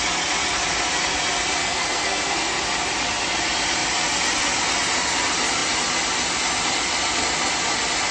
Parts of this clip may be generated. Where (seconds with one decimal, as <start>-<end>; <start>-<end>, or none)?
1.6-2.6